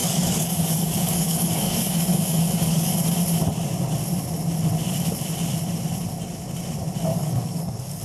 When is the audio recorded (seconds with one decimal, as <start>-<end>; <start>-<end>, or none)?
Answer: 2.9-7.1